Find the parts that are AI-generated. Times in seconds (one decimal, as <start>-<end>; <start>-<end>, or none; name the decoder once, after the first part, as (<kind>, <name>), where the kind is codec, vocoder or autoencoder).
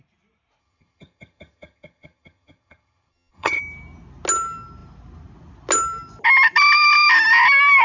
0.6-3.6 (vocoder, HiFi-GAN)